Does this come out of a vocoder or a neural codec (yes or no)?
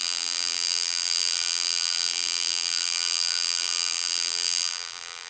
yes